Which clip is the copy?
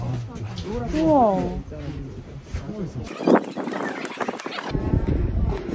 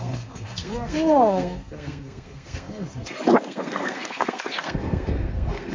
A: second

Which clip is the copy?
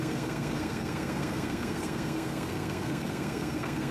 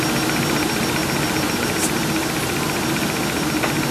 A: first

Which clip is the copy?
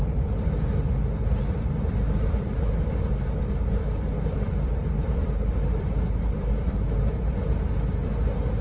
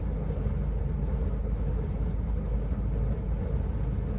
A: first